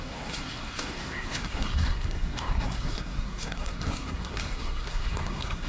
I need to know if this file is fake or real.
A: fake